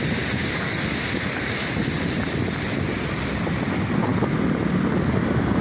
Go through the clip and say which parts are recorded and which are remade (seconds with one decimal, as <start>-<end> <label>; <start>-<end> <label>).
0.0-5.6 recorded